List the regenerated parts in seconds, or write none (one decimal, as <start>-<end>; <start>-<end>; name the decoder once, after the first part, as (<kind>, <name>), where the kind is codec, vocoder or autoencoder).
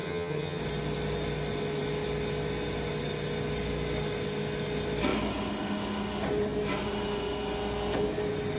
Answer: 0.0-0.6 (vocoder, HiFi-GAN)